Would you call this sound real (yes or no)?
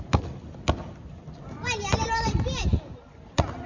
yes